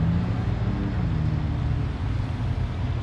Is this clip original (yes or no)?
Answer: yes